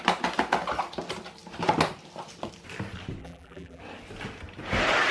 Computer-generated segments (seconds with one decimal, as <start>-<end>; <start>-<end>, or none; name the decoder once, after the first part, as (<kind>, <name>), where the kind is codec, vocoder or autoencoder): 3.2-3.8 (vocoder, BigVGAN v2)